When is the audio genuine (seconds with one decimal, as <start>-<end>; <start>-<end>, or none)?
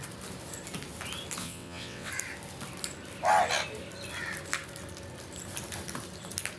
0.0-1.4; 2.1-6.6